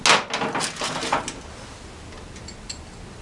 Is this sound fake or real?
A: real